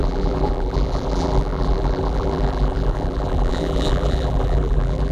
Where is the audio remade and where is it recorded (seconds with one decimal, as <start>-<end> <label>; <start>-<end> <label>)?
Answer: 0.0-5.1 remade